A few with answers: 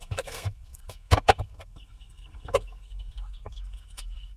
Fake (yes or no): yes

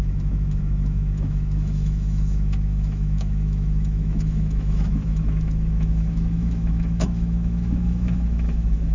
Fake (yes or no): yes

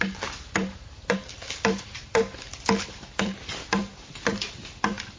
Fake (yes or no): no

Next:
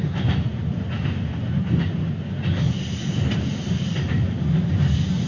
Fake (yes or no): no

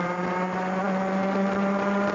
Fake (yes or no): no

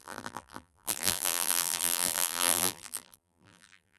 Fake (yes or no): yes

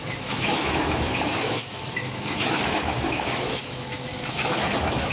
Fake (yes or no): yes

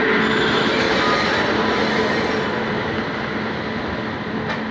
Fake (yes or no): no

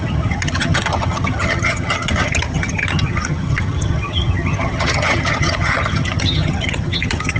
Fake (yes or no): yes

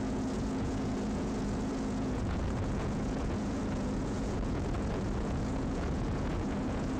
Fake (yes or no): yes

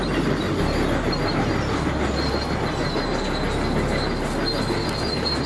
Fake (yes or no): no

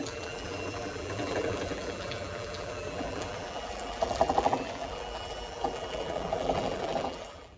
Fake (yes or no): yes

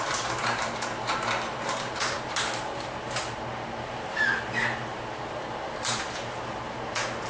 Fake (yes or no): yes